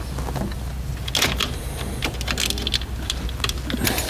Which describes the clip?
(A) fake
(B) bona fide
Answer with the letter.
B